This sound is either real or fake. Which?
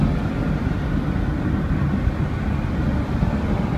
real